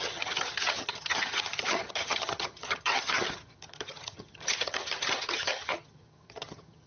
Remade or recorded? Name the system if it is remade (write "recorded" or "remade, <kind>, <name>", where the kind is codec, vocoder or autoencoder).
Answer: remade, vocoder, HiFi-GAN